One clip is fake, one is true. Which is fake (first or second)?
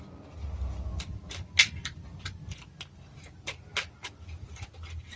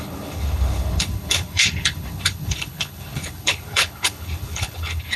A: second